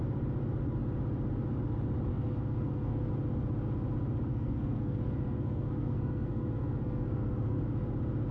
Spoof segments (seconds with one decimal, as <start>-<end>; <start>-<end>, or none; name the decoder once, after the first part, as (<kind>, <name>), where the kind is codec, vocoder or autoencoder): 2.1-3.1 (codec, SNAC); 4.3-7.6